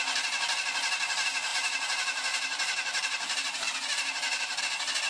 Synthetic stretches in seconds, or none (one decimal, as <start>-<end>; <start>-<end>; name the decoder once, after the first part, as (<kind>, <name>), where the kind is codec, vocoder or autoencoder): 1.5-4.6 (vocoder, BigVGAN v2)